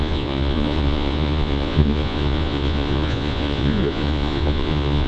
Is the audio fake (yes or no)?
yes